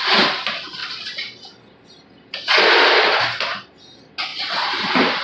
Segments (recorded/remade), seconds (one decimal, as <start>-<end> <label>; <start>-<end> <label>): 0.0-5.2 recorded